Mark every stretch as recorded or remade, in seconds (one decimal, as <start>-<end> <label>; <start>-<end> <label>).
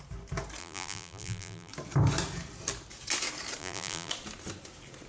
0.0-0.6 recorded; 0.6-1.7 remade; 1.7-3.6 recorded; 3.6-4.1 remade; 4.1-5.1 recorded